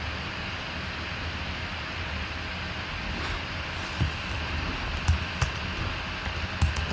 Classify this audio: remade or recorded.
recorded